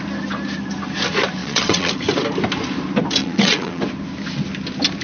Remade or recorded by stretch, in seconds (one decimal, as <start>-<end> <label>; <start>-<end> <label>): 0.0-1.4 recorded; 1.4-1.9 remade; 1.9-3.2 recorded; 3.2-3.8 remade; 3.8-5.0 recorded